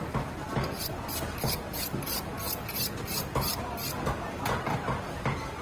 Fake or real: real